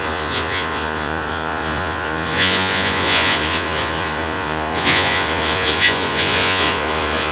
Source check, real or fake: fake